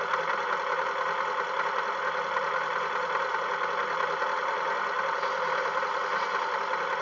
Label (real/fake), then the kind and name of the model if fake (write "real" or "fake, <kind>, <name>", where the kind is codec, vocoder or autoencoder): real